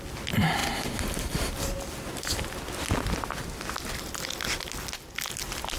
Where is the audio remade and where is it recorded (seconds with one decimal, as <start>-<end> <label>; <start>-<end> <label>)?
0.0-5.8 recorded